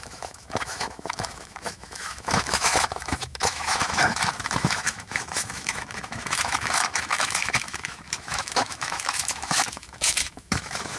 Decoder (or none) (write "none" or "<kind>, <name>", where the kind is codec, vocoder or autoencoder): autoencoder, DAC-VAE